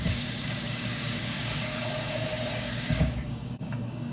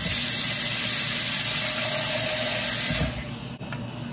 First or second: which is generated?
first